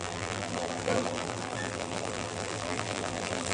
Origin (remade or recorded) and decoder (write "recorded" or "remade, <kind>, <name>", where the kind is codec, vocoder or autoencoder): remade, vocoder, BigVGAN v2